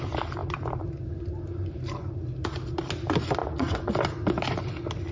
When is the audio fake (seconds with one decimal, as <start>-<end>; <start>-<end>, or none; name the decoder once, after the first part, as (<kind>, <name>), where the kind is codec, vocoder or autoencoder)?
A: 3.4-3.9 (vocoder, Vocos)